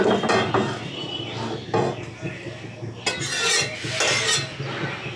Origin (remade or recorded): recorded